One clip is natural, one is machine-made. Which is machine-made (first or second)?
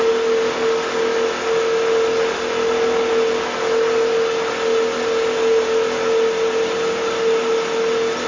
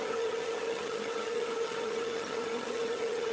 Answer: second